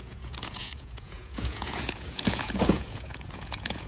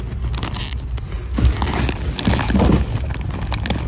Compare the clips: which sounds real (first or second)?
second